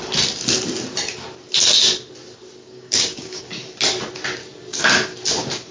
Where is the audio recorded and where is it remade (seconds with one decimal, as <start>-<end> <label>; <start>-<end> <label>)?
0.0-2.6 recorded; 2.6-3.4 remade; 3.4-5.7 recorded